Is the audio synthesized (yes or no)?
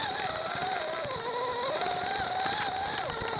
no